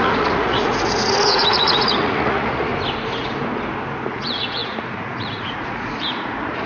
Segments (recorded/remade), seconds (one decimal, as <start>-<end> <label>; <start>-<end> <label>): 0.0-2.7 remade; 2.7-4.1 recorded; 4.1-6.7 remade